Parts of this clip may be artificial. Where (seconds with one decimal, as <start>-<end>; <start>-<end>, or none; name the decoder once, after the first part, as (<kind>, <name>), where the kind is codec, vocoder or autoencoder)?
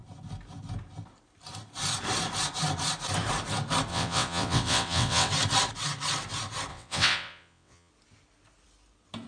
3.9-5.3 (vocoder, WaveNeXt); 6.7-7.9